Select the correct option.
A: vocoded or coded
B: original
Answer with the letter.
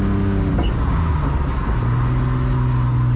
B